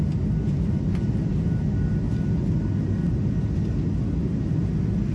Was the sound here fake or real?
real